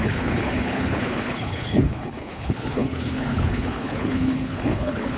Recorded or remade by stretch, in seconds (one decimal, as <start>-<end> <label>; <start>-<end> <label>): 0.0-5.2 remade